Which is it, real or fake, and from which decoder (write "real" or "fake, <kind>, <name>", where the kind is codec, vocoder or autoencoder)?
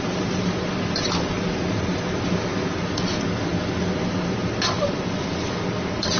real